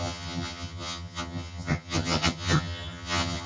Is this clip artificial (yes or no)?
yes